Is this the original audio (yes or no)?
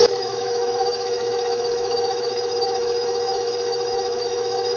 no